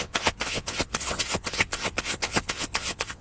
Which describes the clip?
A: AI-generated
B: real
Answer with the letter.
A